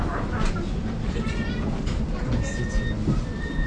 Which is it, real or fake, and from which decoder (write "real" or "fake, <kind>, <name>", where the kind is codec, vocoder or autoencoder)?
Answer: real